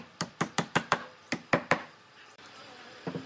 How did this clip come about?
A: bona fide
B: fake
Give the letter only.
B